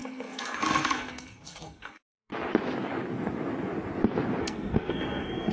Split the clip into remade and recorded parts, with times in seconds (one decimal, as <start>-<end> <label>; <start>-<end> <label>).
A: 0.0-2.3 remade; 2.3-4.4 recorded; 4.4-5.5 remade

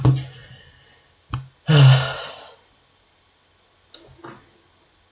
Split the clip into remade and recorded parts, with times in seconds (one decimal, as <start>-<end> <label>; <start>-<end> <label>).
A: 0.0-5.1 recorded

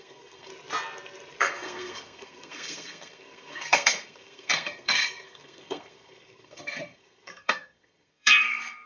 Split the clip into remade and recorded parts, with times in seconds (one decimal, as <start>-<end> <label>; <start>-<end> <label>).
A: 0.0-0.5 remade; 0.5-1.4 recorded; 1.4-8.9 remade